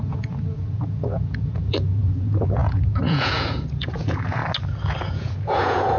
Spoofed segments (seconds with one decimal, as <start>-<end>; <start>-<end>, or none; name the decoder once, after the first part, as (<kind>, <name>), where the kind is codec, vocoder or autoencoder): 0.0-4.4 (vocoder, Vocos); 5.0-6.0